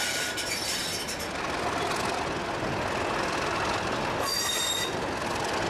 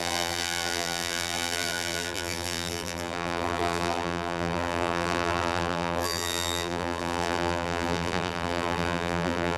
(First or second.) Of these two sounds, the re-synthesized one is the second